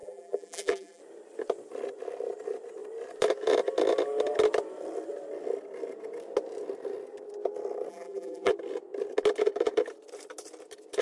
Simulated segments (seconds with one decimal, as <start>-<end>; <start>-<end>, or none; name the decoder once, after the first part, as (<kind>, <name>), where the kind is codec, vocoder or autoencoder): 0.0-1.0 (vocoder, BigVGAN v2); 7.9-8.5